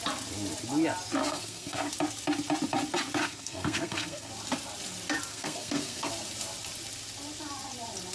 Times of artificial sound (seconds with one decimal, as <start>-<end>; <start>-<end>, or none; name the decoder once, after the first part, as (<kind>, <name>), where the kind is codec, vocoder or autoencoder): 1.2-1.9 (codec, SNAC); 3.2-4.3; 5.3-6.1